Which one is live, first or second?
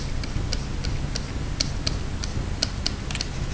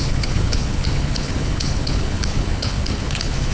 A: first